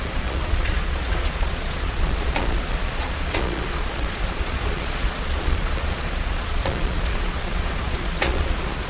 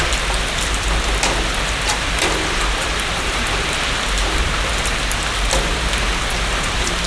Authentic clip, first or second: second